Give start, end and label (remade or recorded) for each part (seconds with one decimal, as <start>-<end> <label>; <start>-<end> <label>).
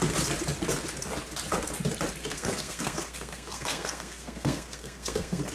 0.0-2.2 recorded; 2.2-5.5 remade